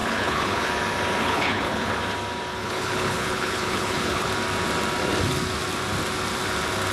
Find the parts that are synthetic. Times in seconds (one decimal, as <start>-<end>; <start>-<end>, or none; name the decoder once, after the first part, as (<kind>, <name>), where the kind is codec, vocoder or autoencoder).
0.0-0.7 (codec, HILCodec); 1.2-1.9; 2.5-4.3